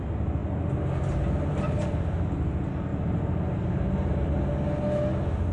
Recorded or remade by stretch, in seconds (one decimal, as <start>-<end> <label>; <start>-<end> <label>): 0.0-2.9 recorded; 2.9-4.3 remade; 4.3-5.5 recorded

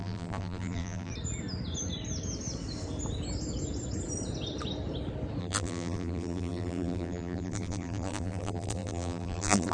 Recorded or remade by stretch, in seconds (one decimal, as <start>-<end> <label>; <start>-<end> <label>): 0.0-1.1 remade; 1.1-5.4 recorded; 5.4-9.7 remade

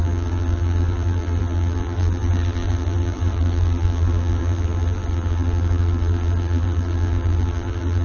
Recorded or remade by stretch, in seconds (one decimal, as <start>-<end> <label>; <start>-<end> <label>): 0.0-8.0 remade

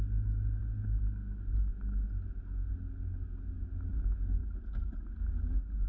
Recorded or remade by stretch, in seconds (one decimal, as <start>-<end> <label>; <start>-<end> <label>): 0.0-5.9 recorded